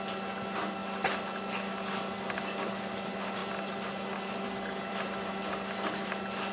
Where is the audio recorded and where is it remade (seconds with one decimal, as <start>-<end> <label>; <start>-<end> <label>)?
0.0-6.5 recorded